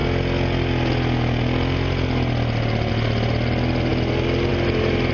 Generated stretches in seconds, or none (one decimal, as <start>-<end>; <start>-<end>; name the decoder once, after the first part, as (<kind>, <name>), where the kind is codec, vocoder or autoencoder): none